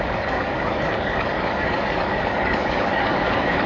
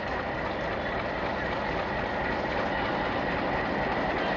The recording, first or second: second